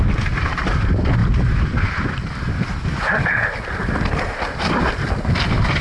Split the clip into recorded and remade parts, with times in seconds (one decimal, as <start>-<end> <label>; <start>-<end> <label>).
0.0-5.8 recorded